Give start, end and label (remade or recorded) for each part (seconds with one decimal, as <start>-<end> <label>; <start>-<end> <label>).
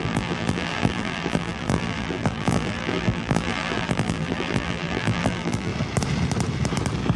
0.0-5.7 remade; 5.7-7.2 recorded